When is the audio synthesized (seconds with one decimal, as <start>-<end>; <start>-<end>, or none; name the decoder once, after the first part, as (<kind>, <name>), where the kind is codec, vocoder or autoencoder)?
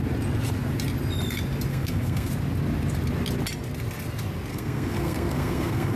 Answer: 1.7-2.3 (codec, SNAC); 4.5-6.0